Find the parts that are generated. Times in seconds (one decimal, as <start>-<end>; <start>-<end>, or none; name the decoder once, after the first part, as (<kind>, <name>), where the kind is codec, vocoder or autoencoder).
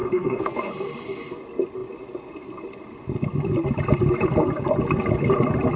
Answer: 0.0-0.7 (codec, SNAC)